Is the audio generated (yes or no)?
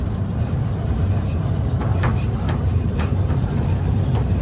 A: yes